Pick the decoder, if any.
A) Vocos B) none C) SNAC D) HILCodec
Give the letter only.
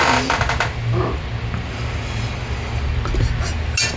B